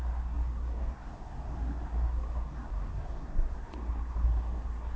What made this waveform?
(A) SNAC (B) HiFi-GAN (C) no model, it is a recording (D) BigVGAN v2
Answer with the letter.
A